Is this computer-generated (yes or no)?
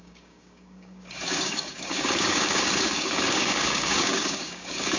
yes